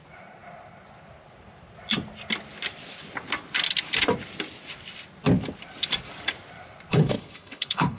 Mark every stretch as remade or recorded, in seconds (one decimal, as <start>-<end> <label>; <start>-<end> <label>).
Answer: 0.0-6.9 recorded; 6.9-8.0 remade